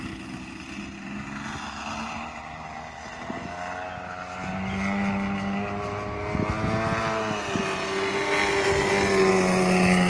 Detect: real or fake real